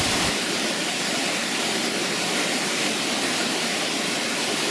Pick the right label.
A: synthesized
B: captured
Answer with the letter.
A